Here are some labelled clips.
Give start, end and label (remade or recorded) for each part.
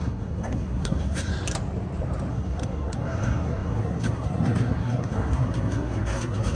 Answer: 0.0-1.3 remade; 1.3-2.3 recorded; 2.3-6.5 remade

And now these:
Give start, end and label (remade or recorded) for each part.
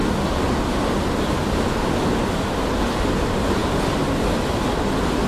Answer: 0.0-5.3 recorded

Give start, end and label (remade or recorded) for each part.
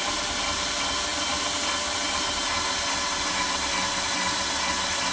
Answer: 0.0-5.1 recorded